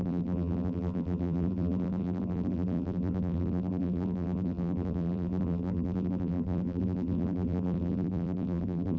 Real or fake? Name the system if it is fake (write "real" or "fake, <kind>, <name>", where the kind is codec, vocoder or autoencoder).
fake, vocoder, BigVGAN v2